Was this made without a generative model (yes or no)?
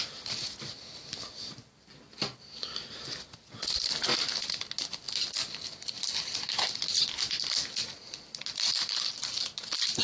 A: yes